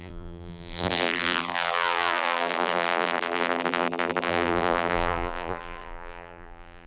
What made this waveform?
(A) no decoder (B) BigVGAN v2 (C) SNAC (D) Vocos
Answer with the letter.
B